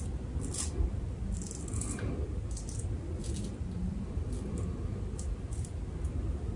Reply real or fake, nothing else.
real